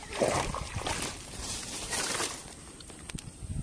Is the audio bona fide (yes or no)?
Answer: no